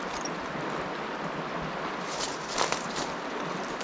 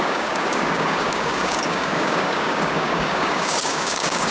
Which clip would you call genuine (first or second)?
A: first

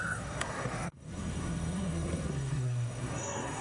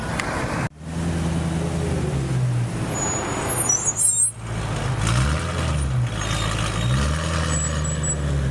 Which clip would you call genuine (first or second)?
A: second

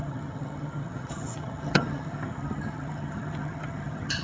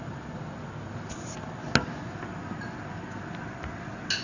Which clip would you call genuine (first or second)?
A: second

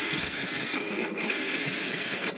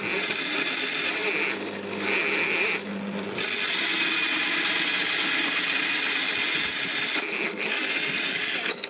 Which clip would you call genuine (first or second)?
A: second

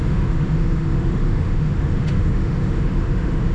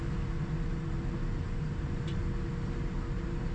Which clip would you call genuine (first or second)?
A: second